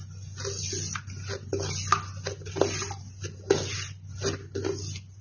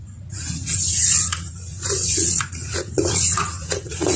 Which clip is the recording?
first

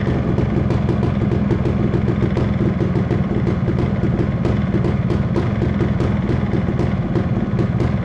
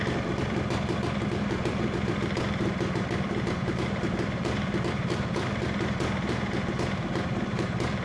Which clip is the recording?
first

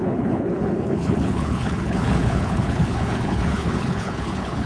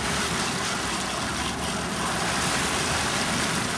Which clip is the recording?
second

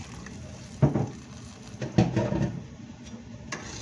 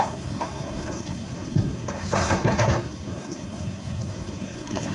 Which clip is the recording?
first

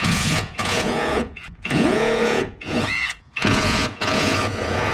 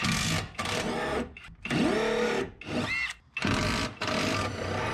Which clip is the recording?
second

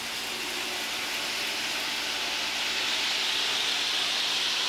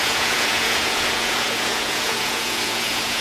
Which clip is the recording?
first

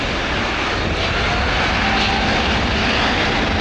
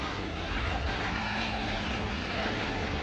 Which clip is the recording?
first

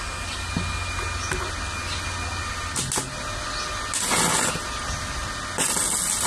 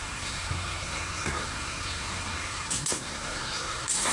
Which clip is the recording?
first